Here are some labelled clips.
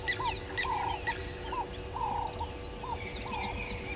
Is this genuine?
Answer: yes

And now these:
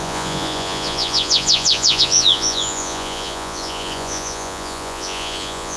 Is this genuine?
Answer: no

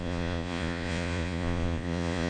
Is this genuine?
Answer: no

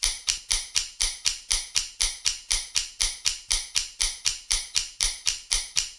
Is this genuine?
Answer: yes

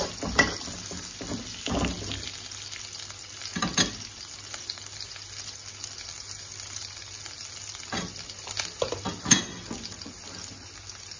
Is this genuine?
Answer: yes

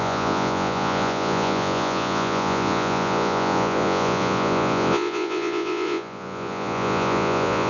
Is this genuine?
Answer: no